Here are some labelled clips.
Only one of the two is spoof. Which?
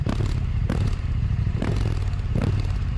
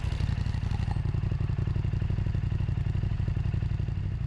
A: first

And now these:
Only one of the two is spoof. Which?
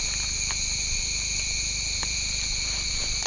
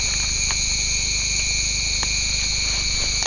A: first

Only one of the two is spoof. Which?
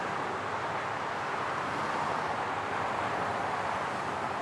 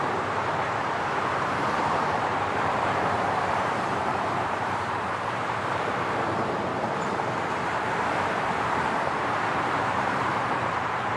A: second